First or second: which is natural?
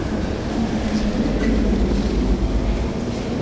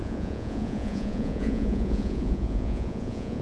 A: first